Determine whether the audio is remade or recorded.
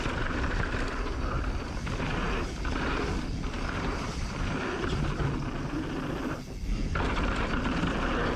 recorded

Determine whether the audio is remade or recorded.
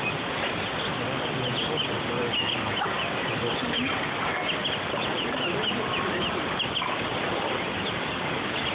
recorded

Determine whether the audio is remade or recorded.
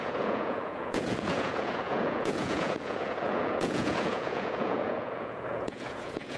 remade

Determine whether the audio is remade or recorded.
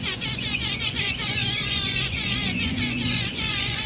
remade